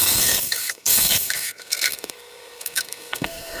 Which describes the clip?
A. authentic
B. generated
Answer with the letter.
B